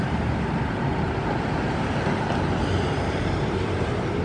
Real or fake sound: fake